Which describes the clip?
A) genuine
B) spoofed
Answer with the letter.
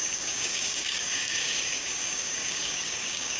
B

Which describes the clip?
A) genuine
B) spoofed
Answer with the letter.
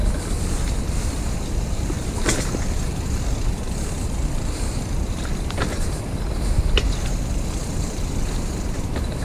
B